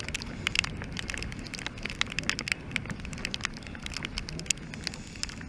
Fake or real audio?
real